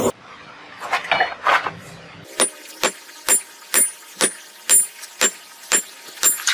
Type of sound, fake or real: real